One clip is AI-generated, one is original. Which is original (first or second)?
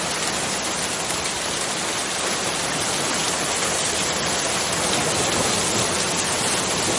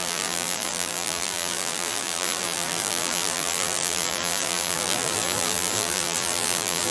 first